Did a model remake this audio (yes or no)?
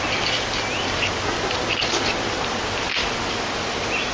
no